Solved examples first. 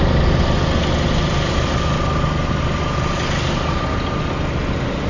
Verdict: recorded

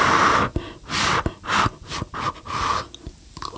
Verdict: recorded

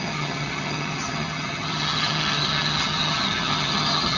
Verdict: remade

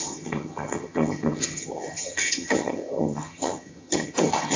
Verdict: remade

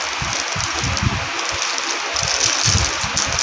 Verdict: recorded